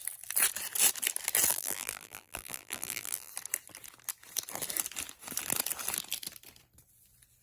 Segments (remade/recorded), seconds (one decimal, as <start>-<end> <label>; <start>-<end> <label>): 0.0-1.5 recorded; 1.5-3.3 remade; 3.3-7.4 recorded